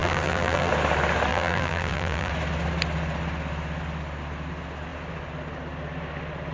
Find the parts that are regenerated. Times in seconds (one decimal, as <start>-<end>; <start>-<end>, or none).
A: 0.0-0.7; 1.3-2.3